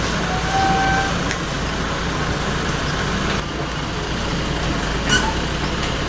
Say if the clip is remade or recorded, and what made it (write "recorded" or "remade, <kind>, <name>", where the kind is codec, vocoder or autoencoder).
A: recorded